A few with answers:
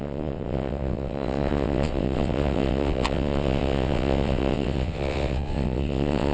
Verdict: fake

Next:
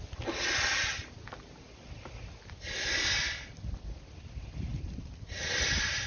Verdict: real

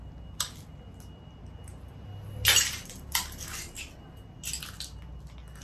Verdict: real